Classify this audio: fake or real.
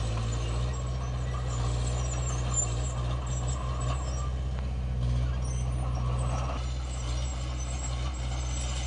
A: real